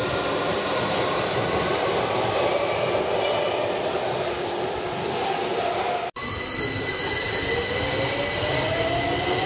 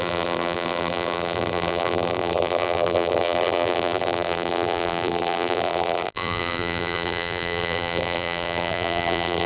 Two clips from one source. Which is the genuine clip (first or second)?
first